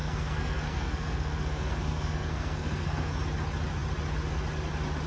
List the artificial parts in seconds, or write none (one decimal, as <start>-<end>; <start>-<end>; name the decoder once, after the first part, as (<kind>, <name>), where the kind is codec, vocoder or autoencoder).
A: 0.0-3.1 (codec, SNAC)